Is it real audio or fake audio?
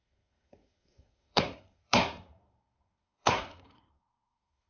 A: fake